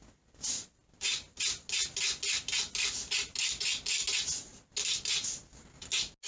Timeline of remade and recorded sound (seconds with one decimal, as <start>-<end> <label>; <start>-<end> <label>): 0.0-6.3 recorded